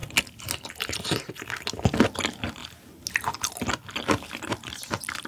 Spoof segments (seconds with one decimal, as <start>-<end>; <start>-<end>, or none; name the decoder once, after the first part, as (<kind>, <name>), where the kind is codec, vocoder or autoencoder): none